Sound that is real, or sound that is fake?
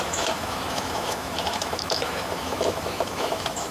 fake